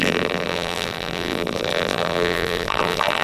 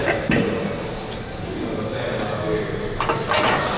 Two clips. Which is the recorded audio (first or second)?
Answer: second